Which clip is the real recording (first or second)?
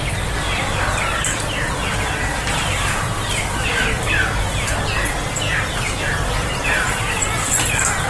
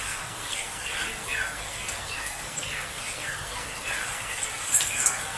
first